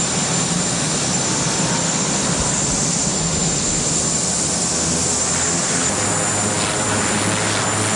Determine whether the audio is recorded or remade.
recorded